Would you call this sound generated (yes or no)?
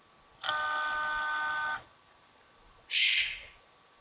no